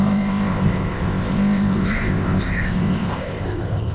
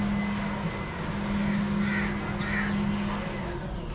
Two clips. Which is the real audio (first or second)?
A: second